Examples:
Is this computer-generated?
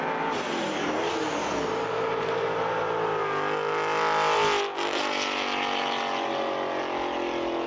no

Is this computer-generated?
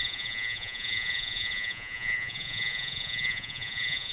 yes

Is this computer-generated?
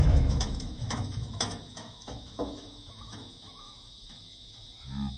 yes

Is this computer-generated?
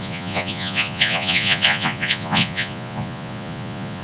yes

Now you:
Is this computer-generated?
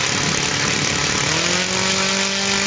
no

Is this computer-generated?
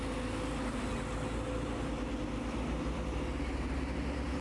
no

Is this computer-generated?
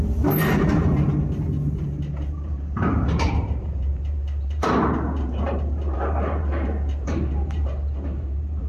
yes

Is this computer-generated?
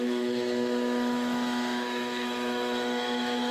yes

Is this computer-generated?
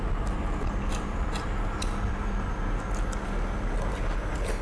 no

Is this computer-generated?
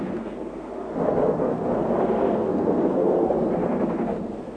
yes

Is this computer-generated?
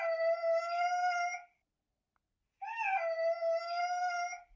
no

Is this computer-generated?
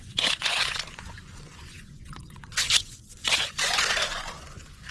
yes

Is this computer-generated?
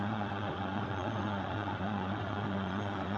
yes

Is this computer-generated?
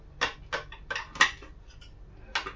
no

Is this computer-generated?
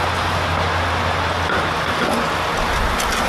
no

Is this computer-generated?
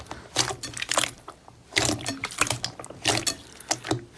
no